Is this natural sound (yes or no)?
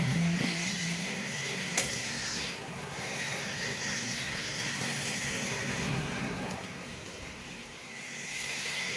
no